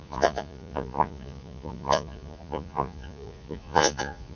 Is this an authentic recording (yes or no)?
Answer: no